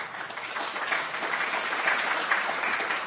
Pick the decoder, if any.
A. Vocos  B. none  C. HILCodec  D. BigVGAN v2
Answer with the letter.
B